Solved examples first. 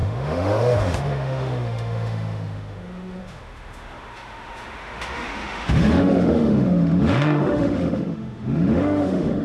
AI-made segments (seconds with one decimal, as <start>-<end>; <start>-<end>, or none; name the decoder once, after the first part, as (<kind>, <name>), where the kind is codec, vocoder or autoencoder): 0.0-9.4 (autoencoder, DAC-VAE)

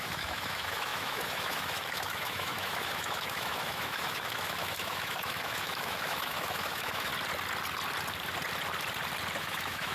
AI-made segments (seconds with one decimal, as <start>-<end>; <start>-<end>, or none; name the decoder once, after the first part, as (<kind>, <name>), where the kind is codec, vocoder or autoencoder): 0.0-7.1 (autoencoder, DAC-VAE); 9.4-9.9

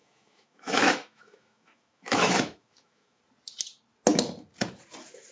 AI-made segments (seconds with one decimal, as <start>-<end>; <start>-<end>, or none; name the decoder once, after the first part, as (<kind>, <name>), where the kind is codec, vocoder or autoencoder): 0.0-3.2 (autoencoder, DAC-VAE)